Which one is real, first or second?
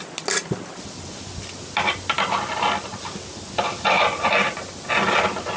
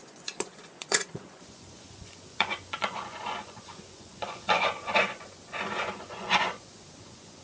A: first